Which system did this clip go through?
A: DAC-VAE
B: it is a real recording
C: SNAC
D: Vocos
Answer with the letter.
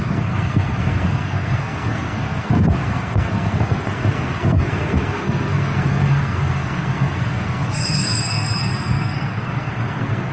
C